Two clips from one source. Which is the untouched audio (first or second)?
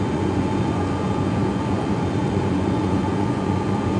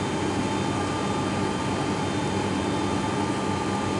second